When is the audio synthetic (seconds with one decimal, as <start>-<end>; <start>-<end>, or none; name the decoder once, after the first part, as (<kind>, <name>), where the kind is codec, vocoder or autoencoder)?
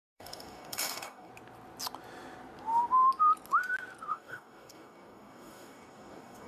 0.0-1.3 (codec, DAC); 4.1-6.5